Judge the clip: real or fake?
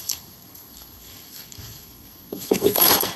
fake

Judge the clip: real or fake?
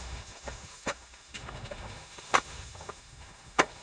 fake